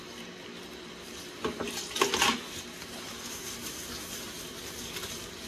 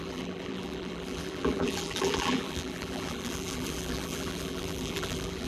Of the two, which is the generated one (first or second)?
second